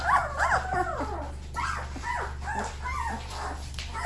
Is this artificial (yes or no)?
no